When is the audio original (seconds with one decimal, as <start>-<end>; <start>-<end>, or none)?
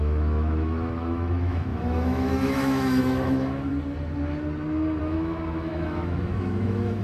3.7-5.0